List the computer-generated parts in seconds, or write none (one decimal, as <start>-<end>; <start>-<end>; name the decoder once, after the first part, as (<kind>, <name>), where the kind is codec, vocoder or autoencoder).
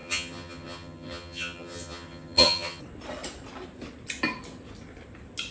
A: 0.0-2.8 (vocoder, HiFi-GAN)